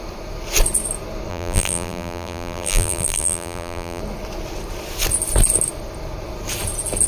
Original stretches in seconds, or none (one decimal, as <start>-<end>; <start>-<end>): 0.0-1.3; 4.0-7.1